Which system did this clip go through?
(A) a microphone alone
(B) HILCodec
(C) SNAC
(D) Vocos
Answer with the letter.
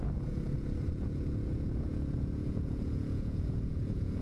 D